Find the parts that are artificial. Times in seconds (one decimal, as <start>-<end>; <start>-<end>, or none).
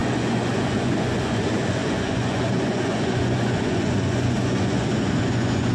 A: 0.0-5.7